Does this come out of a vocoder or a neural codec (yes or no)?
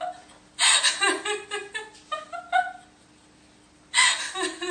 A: no